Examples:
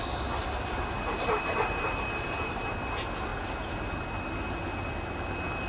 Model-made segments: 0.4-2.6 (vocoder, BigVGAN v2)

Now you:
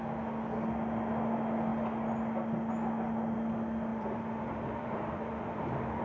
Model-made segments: 3.9-6.0 (vocoder, BigVGAN v2)

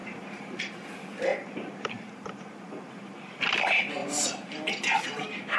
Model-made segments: 0.0-0.6 (vocoder, BigVGAN v2); 1.3-3.4

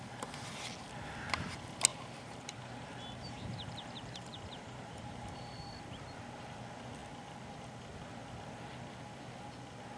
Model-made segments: 1.9-5.7 (vocoder, BigVGAN v2)

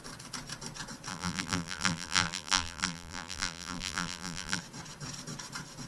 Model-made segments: 1.1-4.6 (vocoder, BigVGAN v2)